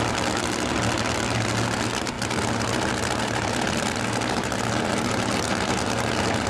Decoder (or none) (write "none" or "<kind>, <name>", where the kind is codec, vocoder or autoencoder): none